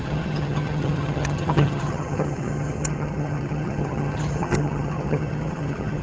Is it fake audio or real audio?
fake